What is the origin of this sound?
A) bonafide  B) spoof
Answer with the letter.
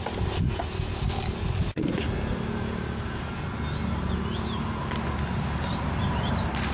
A